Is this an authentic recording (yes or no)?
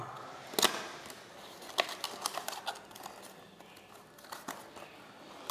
yes